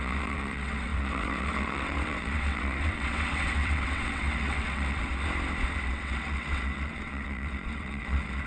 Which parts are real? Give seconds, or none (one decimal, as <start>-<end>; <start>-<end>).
5.1-5.9